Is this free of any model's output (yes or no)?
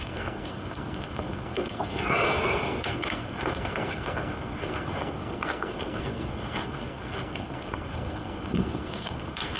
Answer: no